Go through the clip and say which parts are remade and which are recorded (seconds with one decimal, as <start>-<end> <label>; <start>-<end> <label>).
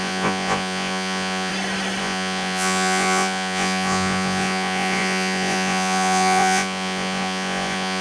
0.0-1.5 remade; 1.5-2.0 recorded; 2.0-8.0 remade